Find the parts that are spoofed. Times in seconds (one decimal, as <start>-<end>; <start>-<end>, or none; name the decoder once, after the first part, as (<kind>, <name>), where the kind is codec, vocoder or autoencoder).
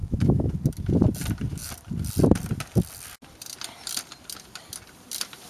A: 0.0-0.5 (autoencoder, DAC-VAE)